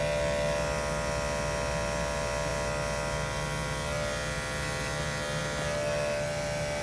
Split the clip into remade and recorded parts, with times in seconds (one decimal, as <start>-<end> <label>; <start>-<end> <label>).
0.0-6.8 recorded